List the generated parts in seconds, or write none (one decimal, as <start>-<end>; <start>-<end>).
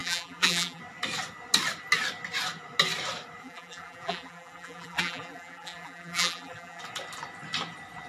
0.0-0.8; 3.4-6.8